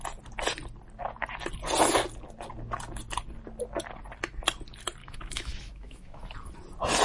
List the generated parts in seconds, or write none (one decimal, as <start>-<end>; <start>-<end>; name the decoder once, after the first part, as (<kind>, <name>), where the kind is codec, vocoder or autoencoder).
5.0-6.2 (autoencoder, DAC-VAE)